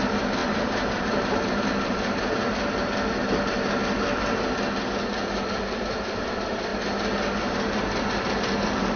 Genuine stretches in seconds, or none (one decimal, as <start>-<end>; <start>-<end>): 2.4-5.4; 6.7-8.2